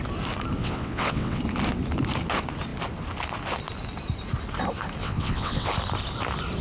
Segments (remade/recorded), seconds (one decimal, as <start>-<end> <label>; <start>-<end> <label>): 0.0-0.6 recorded; 0.6-1.4 remade; 1.4-5.0 recorded; 5.0-5.7 remade; 5.7-6.6 recorded